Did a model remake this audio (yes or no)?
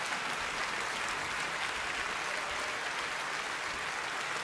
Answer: no